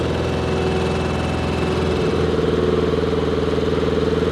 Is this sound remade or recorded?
recorded